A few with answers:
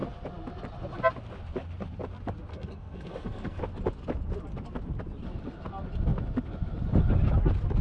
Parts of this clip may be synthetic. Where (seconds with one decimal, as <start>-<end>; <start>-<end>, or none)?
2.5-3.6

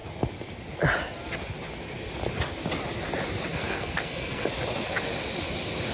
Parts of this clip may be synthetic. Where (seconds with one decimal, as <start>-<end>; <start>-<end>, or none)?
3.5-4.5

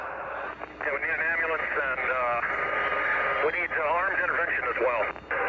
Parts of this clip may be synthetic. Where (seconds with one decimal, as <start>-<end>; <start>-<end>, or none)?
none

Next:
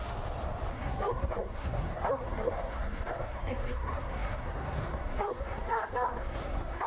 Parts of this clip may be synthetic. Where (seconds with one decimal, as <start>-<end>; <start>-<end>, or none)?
0.7-6.9